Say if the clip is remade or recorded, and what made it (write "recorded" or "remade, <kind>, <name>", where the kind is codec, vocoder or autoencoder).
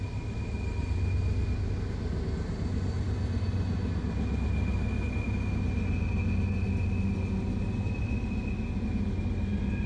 recorded